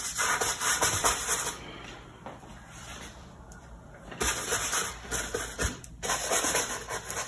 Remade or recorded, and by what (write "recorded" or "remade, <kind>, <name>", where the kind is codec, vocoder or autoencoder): remade, vocoder, BigVGAN v2